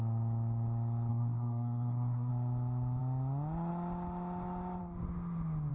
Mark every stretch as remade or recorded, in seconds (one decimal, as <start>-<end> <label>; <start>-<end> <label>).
0.0-1.1 recorded; 1.1-2.3 remade; 2.3-5.7 recorded